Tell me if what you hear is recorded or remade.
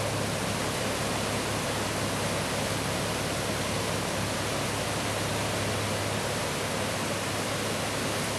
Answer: recorded